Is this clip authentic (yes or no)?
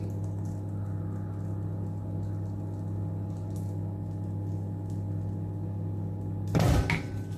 yes